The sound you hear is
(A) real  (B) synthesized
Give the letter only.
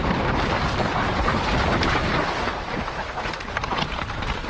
B